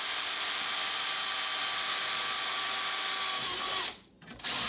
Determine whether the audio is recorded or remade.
recorded